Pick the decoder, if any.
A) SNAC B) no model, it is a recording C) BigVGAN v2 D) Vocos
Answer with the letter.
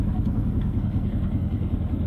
A